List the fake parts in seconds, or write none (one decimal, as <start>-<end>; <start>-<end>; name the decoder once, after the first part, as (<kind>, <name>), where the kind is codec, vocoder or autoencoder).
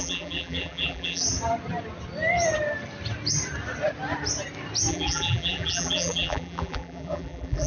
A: 0.0-1.2 (vocoder, BigVGAN v2); 4.9-7.7